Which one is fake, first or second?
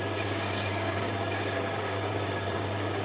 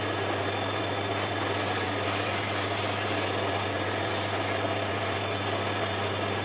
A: first